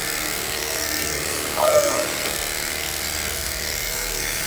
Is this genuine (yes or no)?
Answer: no